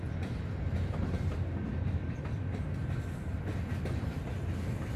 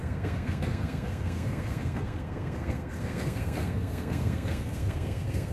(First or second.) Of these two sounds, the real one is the first